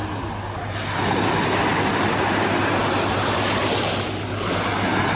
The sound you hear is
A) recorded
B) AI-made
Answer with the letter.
A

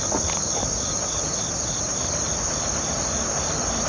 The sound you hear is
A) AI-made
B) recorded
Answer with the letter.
B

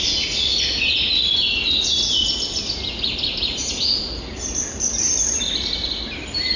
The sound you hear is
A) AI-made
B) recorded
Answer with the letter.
B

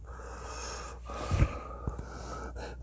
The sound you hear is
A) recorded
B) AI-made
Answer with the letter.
A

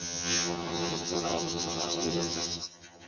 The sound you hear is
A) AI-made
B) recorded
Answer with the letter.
A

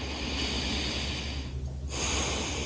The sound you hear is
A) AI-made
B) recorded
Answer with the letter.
B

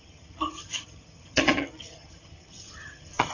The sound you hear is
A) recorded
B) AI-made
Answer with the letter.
B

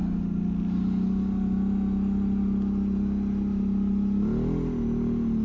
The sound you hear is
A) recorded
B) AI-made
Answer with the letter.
A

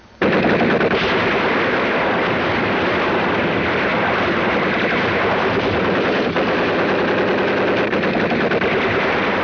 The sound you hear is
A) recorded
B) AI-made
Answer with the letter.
A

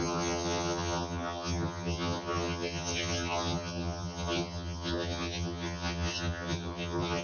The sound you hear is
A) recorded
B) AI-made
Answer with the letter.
B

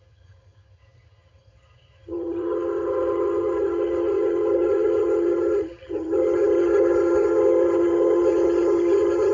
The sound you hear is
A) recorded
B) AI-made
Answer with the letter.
B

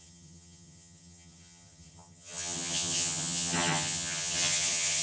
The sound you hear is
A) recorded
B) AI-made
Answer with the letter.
B